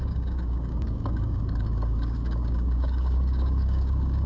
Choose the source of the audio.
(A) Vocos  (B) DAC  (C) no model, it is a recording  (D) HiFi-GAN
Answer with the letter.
B